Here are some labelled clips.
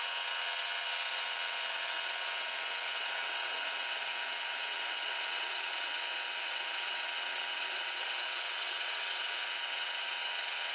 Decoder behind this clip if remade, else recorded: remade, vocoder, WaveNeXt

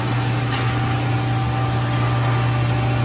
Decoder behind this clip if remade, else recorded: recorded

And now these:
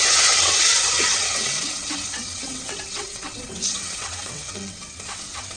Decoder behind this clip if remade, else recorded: remade, vocoder, WaveNeXt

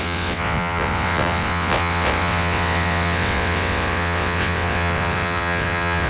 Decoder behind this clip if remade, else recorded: remade, vocoder, WaveNeXt